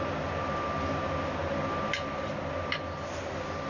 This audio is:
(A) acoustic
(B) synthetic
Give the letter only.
A